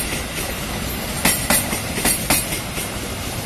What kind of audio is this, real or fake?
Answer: real